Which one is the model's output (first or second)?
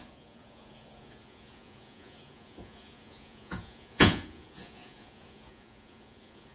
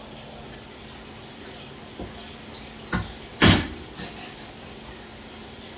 first